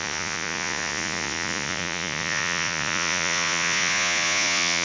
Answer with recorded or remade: remade